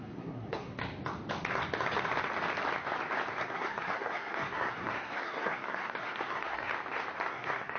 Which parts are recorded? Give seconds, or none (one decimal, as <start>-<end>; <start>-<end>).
0.8-3.4; 6.7-7.3